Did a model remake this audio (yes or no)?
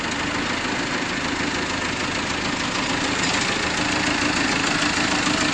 no